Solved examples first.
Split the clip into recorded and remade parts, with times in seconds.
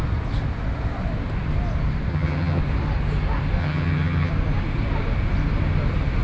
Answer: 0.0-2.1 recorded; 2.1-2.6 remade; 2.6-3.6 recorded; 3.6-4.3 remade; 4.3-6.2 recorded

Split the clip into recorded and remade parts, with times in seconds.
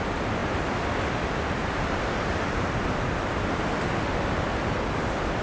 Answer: 0.0-5.4 recorded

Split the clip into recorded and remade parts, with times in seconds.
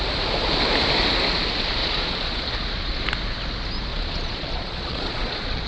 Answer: 0.0-1.8 recorded; 1.8-3.0 remade; 3.0-3.9 recorded; 3.9-5.7 remade